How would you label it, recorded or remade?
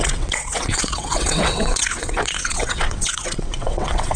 remade